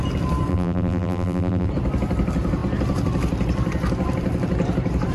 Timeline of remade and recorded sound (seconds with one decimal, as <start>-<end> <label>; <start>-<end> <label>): 0.0-0.5 recorded; 0.5-1.7 remade; 1.7-5.1 recorded